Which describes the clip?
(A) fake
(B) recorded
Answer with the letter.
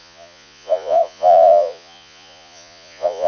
A